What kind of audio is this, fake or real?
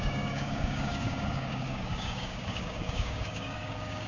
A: fake